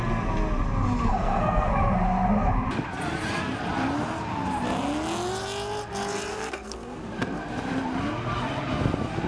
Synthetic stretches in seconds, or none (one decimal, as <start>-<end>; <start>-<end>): 1.1-1.7; 6.3-7.0